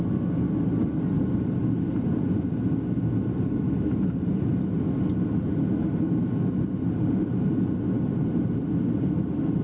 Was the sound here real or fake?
real